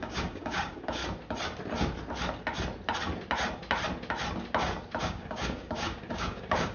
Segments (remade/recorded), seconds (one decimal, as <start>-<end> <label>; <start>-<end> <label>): 0.0-1.0 remade; 1.0-5.0 recorded; 5.0-6.7 remade